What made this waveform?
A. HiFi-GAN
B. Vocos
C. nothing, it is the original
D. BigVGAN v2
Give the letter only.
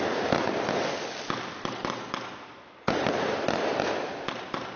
C